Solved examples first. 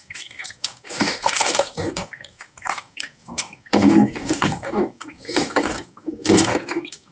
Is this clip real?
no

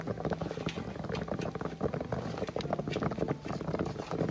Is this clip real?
yes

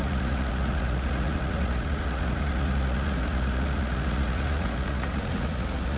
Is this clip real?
no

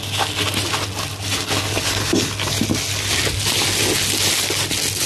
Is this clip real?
yes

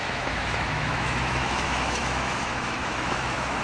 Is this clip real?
no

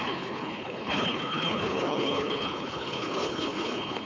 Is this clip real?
no